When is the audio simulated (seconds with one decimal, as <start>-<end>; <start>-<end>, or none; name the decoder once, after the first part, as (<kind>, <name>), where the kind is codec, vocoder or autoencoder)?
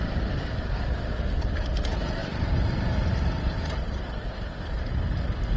2.2-4.5 (vocoder, BigVGAN v2)